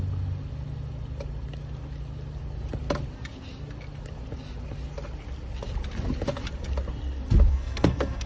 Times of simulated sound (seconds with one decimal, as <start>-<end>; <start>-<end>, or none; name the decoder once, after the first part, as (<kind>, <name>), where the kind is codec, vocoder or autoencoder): 7.5-8.3 (codec, SNAC)